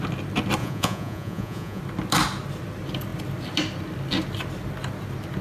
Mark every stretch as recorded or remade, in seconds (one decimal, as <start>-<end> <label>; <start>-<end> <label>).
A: 0.0-0.6 recorded; 0.6-1.8 remade; 1.8-5.4 recorded